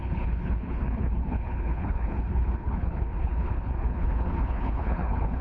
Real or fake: fake